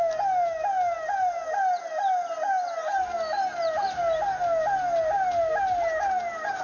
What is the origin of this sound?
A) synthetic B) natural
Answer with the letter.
B